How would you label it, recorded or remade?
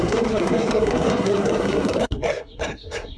remade